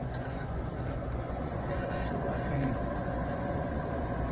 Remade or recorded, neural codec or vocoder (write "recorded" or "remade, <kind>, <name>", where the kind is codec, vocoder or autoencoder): remade, vocoder, Vocos